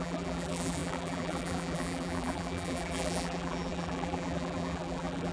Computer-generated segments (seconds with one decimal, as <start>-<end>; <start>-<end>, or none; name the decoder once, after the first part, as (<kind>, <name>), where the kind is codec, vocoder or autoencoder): 0.0-5.3 (vocoder, BigVGAN v2)